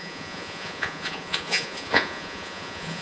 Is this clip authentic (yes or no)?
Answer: no